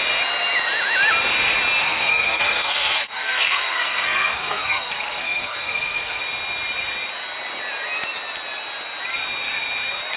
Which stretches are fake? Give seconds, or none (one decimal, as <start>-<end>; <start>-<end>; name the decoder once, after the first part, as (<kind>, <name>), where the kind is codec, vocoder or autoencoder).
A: 1.8-6.2 (codec, SNAC)